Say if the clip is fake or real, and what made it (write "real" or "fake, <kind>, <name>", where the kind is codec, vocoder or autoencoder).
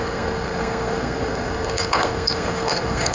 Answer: fake, codec, SNAC